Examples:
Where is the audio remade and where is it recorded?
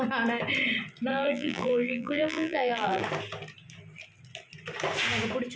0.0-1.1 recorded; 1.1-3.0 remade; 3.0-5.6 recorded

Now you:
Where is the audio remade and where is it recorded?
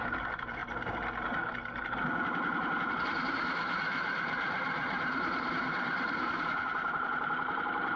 0.0-0.6 remade; 0.6-2.9 recorded; 2.9-8.0 remade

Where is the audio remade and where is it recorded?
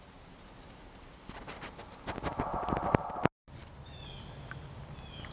0.0-3.6 recorded; 3.6-4.5 remade; 4.5-5.3 recorded